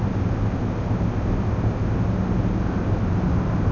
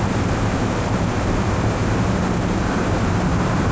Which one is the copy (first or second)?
second